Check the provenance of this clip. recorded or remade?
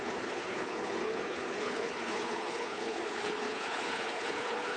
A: remade